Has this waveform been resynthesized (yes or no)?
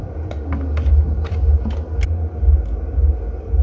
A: no